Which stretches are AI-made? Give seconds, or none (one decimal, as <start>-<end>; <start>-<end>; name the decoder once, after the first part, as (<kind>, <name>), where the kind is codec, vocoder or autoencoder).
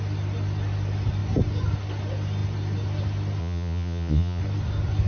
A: 3.4-4.4 (vocoder, Vocos)